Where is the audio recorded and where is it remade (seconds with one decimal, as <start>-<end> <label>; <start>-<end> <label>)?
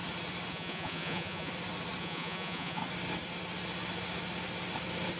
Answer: 0.0-0.5 recorded; 0.5-1.5 remade; 1.5-2.0 recorded; 2.0-2.8 remade; 2.8-5.2 recorded